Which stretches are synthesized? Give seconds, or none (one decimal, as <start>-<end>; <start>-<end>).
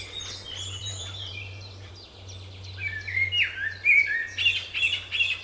0.8-1.9